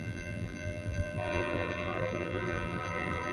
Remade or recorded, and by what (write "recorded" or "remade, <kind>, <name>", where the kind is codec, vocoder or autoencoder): remade, vocoder, BigVGAN v2